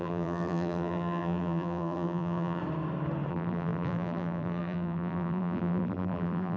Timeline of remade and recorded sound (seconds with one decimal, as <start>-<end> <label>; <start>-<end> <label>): 0.0-2.6 remade; 2.6-3.3 recorded; 3.3-6.6 remade